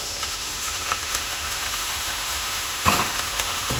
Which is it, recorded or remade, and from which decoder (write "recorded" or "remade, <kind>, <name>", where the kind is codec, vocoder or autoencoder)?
remade, autoencoder, DAC-VAE